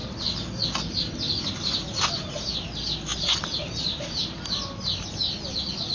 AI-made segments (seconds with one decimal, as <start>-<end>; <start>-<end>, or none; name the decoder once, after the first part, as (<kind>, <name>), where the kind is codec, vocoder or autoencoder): 3.1-4.4 (vocoder, BigVGAN v2)